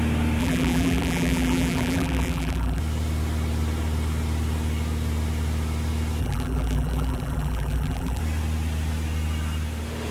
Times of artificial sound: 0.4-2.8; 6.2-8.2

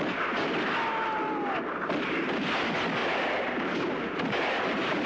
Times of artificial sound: 3.0-5.1

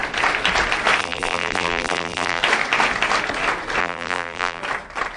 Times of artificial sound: 1.0-2.4; 3.8-4.6

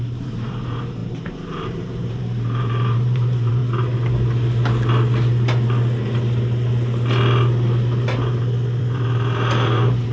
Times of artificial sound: 0.0-3.6; 8.8-10.1

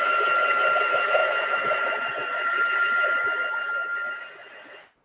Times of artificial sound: 1.2-2.6

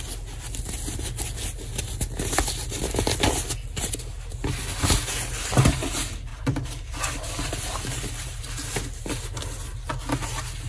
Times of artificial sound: 6.3-9.4

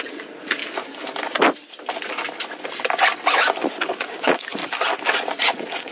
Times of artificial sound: 0.0-0.6; 4.1-4.6; 5.3-5.9

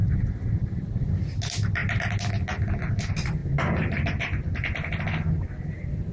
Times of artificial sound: none